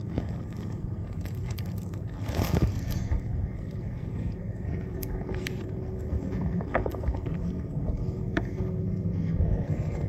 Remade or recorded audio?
remade